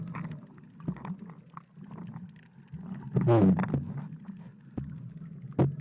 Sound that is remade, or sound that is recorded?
recorded